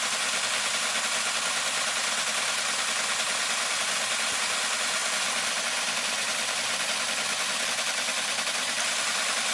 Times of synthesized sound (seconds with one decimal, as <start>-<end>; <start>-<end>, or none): none

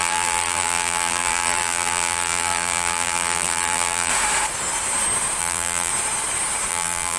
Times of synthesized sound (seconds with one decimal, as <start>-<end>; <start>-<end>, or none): 0.0-4.1; 5.4-5.9; 6.7-7.2

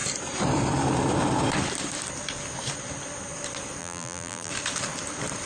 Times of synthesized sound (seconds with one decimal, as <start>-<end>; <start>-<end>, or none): 3.8-4.5

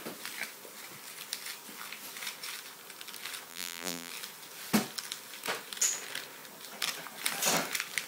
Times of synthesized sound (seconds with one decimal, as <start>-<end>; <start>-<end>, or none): 3.5-4.1

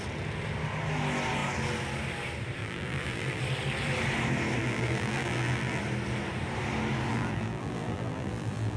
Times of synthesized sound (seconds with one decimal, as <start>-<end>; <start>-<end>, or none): 2.6-3.4; 4.6-5.8; 7.1-8.8